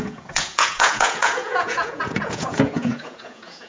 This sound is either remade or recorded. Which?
remade